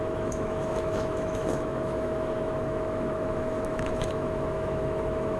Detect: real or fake fake